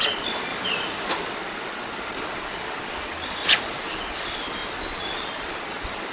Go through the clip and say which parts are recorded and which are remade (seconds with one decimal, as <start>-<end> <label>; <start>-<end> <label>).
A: 0.0-0.5 recorded; 0.5-1.1 remade; 1.1-3.4 recorded; 3.4-4.0 remade; 4.0-6.1 recorded